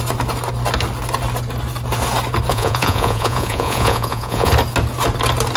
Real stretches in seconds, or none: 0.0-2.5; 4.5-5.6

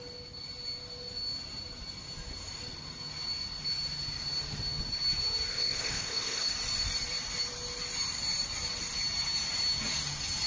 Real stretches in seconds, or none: 0.0-5.5; 6.5-10.5

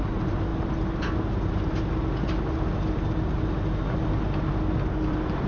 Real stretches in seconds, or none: 0.0-5.5

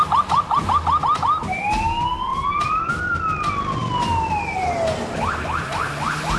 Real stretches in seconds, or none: 0.0-2.3; 2.9-6.4

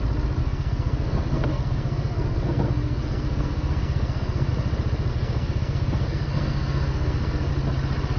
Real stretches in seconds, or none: 0.0-0.4; 4.5-5.1; 7.5-8.2